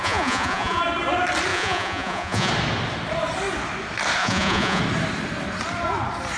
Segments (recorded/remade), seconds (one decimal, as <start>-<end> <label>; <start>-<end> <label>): 0.0-0.8 remade; 0.8-1.5 recorded; 1.5-2.5 remade; 2.5-4.2 recorded; 4.2-4.8 remade; 4.8-6.4 recorded